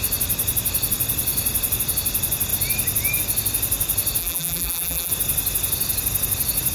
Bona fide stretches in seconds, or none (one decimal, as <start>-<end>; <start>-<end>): 0.0-4.2; 5.1-6.7